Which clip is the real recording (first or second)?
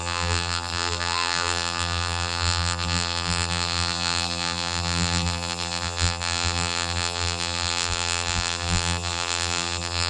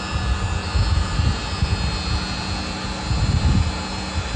second